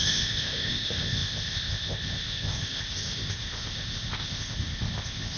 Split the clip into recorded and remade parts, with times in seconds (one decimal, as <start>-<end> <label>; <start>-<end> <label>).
0.0-5.4 remade